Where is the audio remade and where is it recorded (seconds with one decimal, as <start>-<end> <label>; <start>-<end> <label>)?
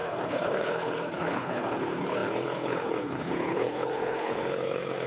0.0-5.1 remade